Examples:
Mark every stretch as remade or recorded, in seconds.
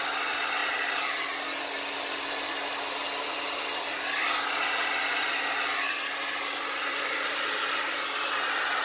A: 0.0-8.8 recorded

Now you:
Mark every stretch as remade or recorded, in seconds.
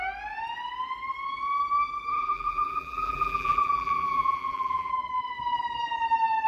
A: 0.0-2.1 recorded; 2.1-4.9 remade; 4.9-6.5 recorded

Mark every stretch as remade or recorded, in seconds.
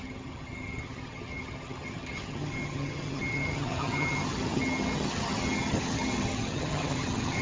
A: 0.0-7.4 remade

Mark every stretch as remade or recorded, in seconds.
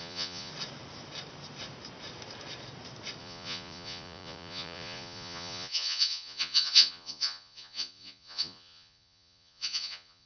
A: 0.0-0.5 remade; 0.5-3.2 recorded; 3.2-10.3 remade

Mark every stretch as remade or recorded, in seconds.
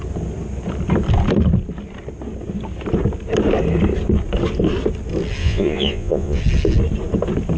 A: 0.0-5.4 recorded; 5.4-6.4 remade; 6.4-7.6 recorded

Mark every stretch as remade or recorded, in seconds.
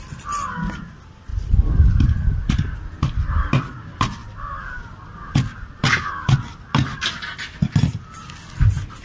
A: 0.0-9.0 recorded